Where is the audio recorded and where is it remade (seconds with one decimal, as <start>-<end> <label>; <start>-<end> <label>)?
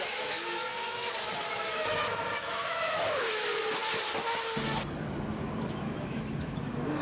0.0-3.8 remade; 3.8-5.6 recorded; 5.6-7.0 remade